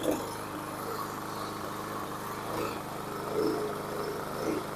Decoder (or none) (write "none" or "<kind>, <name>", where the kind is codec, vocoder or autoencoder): none